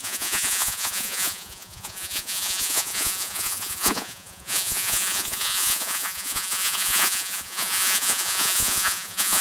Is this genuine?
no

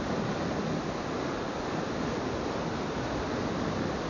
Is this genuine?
yes